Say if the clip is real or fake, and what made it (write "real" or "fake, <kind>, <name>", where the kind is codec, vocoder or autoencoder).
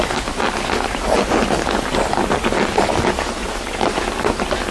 real